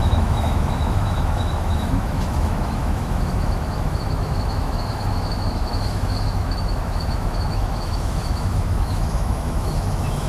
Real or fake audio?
fake